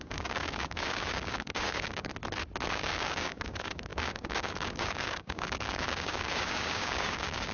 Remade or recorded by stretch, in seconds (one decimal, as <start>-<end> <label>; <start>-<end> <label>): 0.0-2.1 remade; 2.1-2.7 recorded; 2.7-7.5 remade